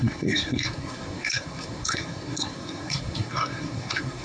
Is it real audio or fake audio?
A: fake